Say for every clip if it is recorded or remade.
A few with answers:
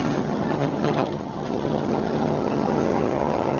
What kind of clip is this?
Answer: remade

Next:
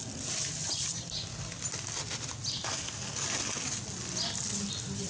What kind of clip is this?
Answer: recorded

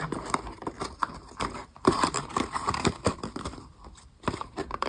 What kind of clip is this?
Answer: remade